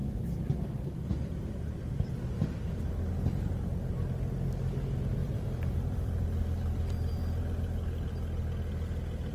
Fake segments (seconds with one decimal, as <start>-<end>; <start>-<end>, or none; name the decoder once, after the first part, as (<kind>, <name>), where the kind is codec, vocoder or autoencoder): 0.0-3.1 (vocoder, BigVGAN v2); 5.2-7.4